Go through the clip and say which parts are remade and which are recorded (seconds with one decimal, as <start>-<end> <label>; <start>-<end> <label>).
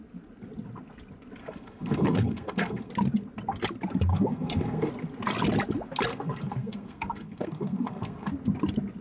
0.0-1.4 recorded; 1.4-2.9 remade; 2.9-4.1 recorded; 4.1-4.9 remade; 4.9-6.1 recorded; 6.1-8.3 remade; 8.3-9.0 recorded